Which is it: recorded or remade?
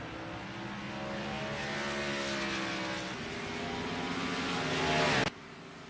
recorded